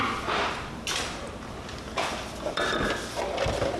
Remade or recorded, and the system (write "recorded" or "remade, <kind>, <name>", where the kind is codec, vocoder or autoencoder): recorded